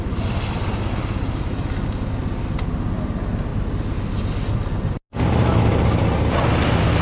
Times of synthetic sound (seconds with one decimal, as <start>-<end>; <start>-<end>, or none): none